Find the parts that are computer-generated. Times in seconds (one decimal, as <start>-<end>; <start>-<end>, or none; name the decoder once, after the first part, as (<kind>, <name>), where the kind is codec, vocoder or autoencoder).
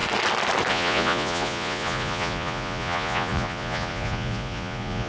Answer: 0.7-5.1 (vocoder, Vocos)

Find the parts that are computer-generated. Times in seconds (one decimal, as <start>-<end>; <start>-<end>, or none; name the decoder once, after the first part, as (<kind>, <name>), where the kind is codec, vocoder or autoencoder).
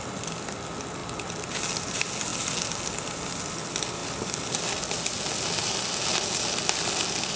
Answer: none